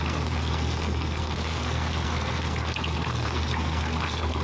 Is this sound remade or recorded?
remade